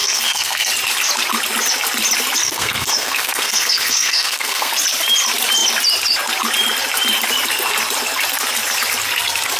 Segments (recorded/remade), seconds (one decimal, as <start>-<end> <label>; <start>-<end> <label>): 0.0-0.7 remade; 0.7-2.4 recorded; 2.4-4.7 remade; 4.7-9.6 recorded